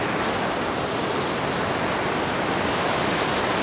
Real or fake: real